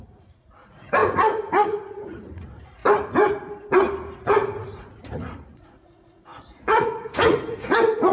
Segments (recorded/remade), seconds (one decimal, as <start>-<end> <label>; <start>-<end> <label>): 0.0-2.8 remade; 2.8-4.3 recorded; 4.3-8.1 remade